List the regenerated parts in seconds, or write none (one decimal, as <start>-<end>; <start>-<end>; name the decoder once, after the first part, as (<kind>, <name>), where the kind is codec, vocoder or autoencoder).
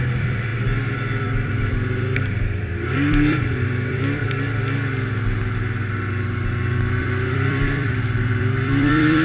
0.0-0.5 (vocoder, BigVGAN v2); 1.2-4.2; 7.0-9.2